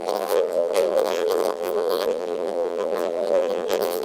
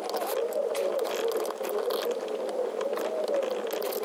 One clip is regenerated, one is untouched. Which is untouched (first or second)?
second